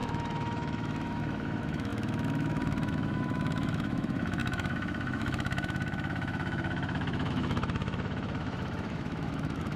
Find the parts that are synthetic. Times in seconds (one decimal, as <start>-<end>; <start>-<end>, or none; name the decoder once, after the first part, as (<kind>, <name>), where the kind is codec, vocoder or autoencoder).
0.0-9.8 (autoencoder, DAC-VAE)